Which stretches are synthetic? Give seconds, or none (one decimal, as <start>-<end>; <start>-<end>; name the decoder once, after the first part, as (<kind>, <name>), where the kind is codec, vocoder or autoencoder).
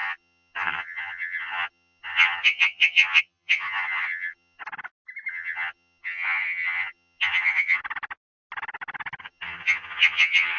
0.0-4.6 (vocoder, HiFi-GAN); 5.3-7.8; 9.2-10.6